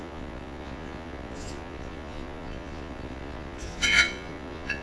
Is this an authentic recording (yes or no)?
no